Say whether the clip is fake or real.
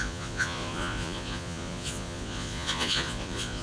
fake